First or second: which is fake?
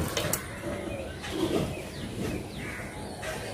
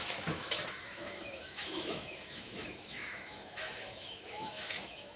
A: second